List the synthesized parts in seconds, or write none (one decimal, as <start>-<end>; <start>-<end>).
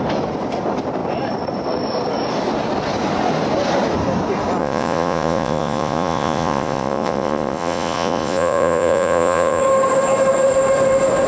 4.6-9.6